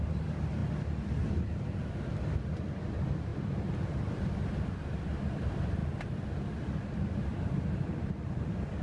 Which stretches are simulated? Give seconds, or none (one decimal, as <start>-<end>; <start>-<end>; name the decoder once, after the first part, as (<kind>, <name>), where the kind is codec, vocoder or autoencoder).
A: 0.0-3.3 (vocoder, BigVGAN v2); 4.5-8.8